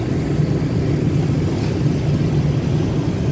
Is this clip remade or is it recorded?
recorded